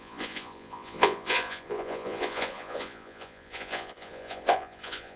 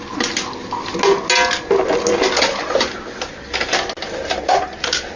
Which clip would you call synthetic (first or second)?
first